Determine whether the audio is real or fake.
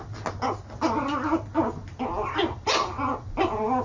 real